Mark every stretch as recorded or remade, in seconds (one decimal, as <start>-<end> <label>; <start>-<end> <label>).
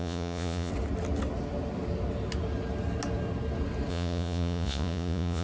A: 0.0-0.7 remade; 0.7-3.9 recorded; 3.9-5.4 remade